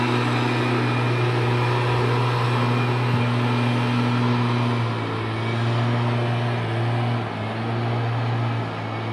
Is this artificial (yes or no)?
no